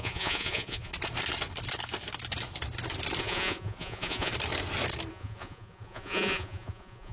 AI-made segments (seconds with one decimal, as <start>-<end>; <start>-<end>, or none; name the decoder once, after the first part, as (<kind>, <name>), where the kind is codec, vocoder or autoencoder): 0.0-0.9 (vocoder, Vocos); 3.2-4.3; 5.1-7.1